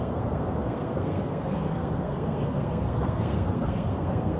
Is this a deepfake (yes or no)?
yes